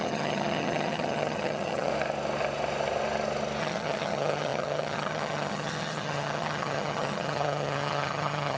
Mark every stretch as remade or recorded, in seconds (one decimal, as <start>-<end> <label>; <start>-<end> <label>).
0.0-1.9 remade; 1.9-3.6 recorded; 3.6-8.6 remade